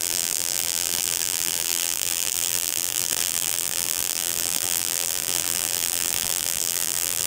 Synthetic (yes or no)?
yes